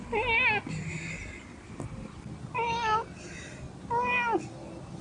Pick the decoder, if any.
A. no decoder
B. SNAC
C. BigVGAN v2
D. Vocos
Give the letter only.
A